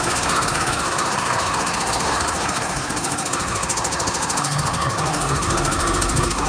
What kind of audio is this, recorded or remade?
remade